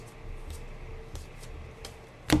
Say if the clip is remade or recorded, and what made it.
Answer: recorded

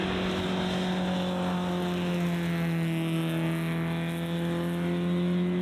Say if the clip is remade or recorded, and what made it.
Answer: recorded